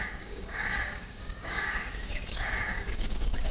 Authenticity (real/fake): fake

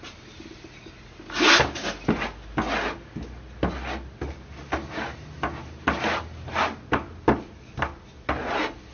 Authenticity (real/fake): real